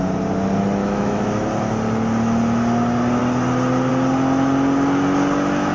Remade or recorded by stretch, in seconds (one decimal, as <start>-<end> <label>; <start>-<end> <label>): 0.0-0.8 recorded; 0.8-1.4 remade; 1.4-5.7 recorded